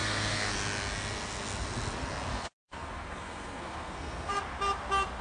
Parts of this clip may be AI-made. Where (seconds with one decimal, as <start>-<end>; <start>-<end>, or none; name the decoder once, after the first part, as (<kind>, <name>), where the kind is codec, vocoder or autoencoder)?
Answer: 0.0-0.5 (codec, SNAC); 2.3-4.3